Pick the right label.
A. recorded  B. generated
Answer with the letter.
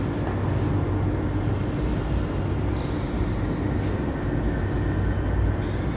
A